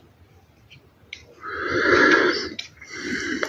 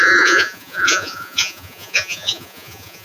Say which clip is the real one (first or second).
first